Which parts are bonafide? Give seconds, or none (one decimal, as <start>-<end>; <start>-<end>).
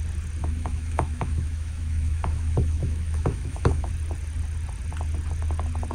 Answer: 0.0-0.4; 3.9-5.9